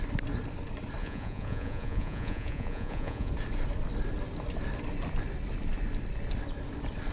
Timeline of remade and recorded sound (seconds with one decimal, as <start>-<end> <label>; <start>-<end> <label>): 0.0-1.0 recorded; 1.0-3.3 remade; 3.3-7.1 recorded